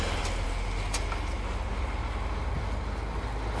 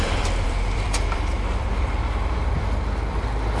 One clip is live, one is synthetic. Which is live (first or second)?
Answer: first